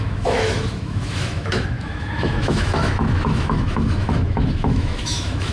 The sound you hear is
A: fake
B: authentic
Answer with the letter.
A